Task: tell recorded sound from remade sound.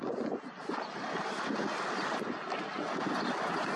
recorded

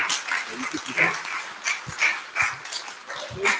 recorded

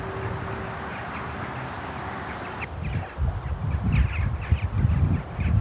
recorded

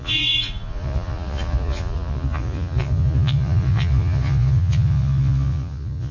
remade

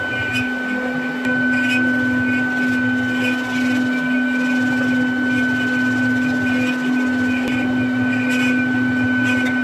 recorded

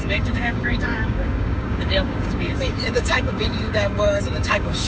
remade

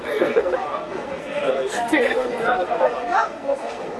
remade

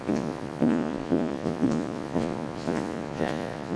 remade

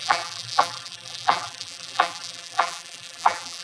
remade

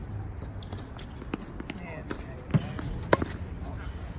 recorded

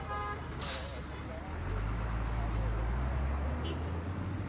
recorded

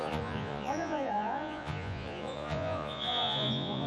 remade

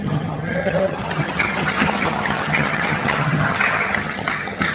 remade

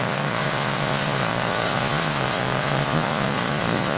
remade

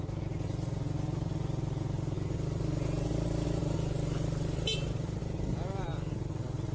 recorded